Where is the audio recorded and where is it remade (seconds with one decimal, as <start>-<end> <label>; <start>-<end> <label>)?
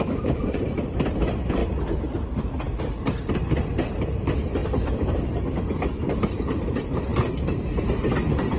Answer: 0.0-1.6 remade; 1.6-2.8 recorded; 2.8-8.6 remade